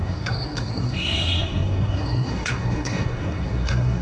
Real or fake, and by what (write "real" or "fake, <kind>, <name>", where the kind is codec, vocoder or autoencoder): fake, codec, SNAC